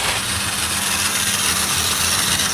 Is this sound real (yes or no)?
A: yes